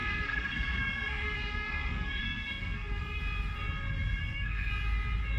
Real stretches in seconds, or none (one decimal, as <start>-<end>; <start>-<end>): 3.2-4.2; 4.7-5.4